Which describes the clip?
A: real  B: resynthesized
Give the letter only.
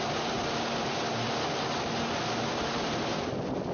A